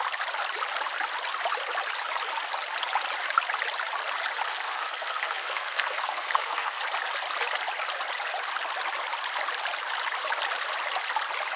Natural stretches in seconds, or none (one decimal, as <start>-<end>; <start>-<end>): 0.0-4.5; 6.8-11.6